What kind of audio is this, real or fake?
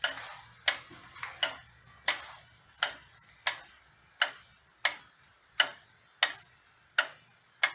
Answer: real